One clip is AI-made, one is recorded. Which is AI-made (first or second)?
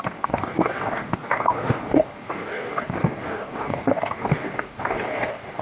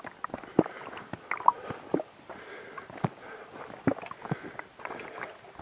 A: first